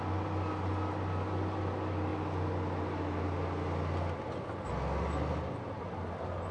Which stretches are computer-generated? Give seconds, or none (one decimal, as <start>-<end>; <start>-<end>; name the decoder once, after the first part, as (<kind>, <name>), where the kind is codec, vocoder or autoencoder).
none